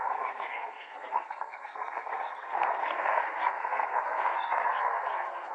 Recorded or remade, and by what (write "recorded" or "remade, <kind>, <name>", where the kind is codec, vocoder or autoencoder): remade, codec, SNAC